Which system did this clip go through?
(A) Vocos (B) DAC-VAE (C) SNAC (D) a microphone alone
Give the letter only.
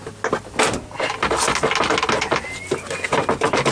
D